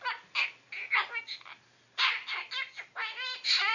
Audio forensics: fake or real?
real